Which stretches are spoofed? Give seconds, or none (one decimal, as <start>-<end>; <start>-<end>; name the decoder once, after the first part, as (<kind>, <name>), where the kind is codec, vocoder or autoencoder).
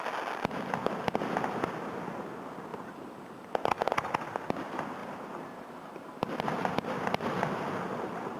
5.0-6.4 (vocoder, BigVGAN v2)